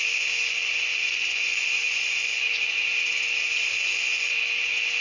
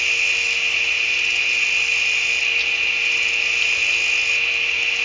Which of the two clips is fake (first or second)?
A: first